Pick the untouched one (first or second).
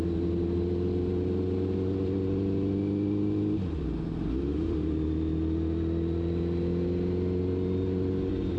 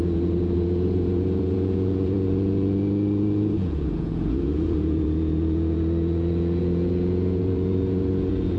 first